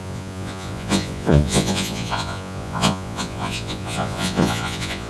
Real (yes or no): no